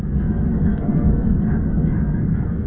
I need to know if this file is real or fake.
fake